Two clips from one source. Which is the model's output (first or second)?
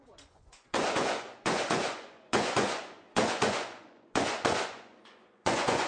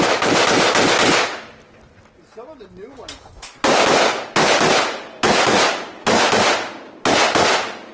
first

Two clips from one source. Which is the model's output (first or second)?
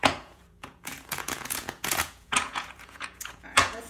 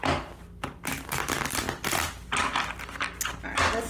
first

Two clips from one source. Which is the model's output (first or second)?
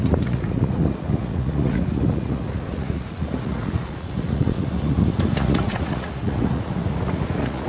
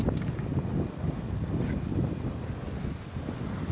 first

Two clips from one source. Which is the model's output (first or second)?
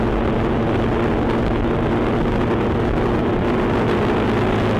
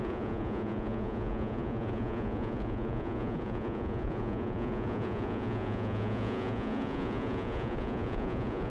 second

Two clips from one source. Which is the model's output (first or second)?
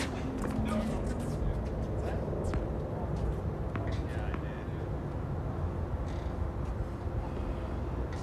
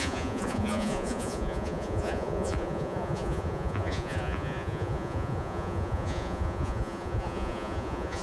second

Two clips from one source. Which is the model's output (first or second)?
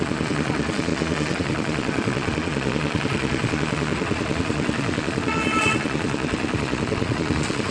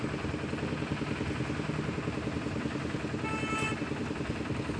first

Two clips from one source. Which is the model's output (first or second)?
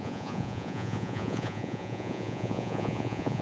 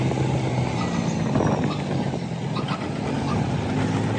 first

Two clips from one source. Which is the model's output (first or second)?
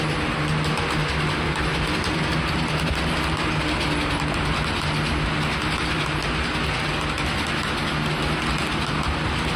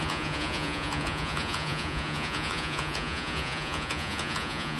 second